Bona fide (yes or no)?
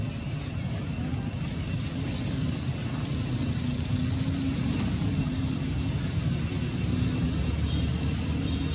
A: yes